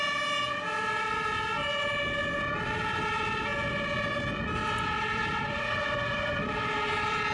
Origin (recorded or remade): recorded